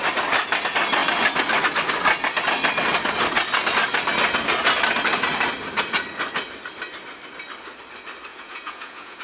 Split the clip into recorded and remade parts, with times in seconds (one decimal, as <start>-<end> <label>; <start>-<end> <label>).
0.0-8.3 recorded; 8.3-9.2 remade